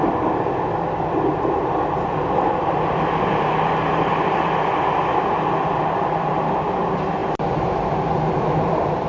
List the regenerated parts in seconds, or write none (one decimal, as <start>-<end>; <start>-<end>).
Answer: 0.0-9.1